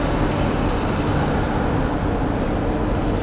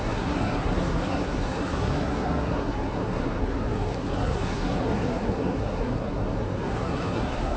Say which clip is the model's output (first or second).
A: second